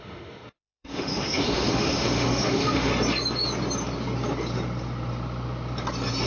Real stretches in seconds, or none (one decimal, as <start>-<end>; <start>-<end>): 2.9-6.3